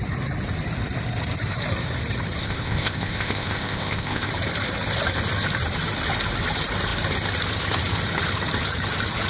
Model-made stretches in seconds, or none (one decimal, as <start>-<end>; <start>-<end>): 2.4-4.3